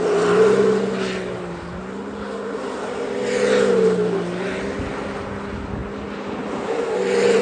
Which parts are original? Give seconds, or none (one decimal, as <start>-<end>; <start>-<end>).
0.0-7.4